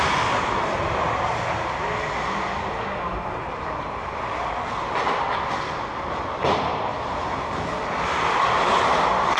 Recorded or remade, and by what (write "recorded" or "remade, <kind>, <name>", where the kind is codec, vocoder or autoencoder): recorded